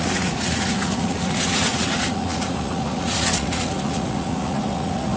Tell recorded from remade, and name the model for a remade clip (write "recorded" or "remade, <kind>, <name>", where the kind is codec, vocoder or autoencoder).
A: remade, vocoder, Vocos